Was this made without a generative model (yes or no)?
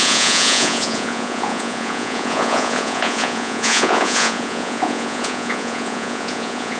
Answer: no